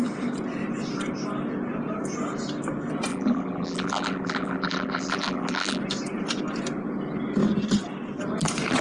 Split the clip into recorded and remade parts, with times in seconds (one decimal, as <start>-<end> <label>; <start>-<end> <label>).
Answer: 0.0-3.1 recorded; 3.1-5.8 remade; 5.8-8.8 recorded